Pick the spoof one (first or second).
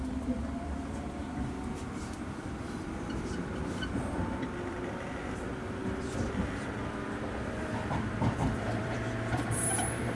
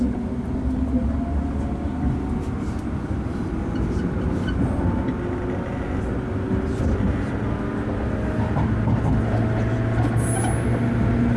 first